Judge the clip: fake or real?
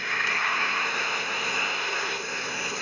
fake